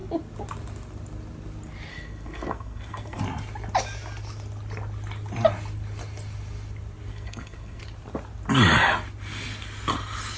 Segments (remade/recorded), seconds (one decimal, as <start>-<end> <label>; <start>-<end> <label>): 0.0-1.9 recorded; 1.9-3.2 remade; 3.2-7.1 recorded; 7.1-7.8 remade; 7.8-10.4 recorded